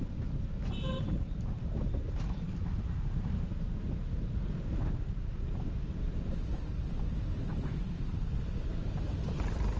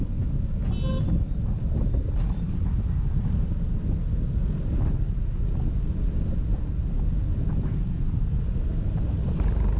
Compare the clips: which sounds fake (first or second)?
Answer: first